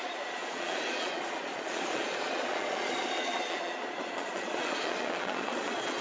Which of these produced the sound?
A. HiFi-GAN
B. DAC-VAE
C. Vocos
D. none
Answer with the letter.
C